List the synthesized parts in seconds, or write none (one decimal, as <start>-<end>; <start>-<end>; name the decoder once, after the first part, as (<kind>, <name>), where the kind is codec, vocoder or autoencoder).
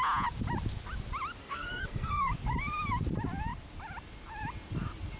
1.4-2.3 (codec, SNAC)